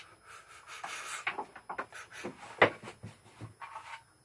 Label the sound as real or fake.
real